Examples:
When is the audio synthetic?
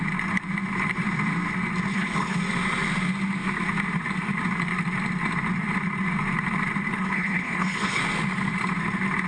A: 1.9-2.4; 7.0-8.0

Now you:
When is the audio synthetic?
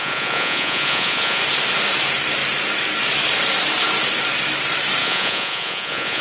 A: 0.0-1.4; 5.0-6.2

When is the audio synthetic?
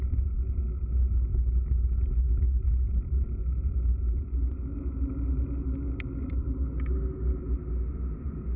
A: none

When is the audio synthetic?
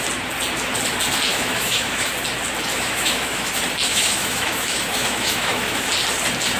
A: 1.3-2.1; 2.7-3.5; 3.9-5.9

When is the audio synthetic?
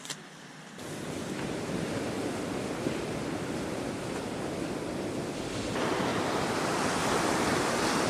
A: 0.0-6.1; 7.2-8.1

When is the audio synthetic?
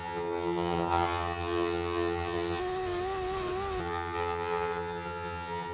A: 0.0-2.6; 3.8-5.7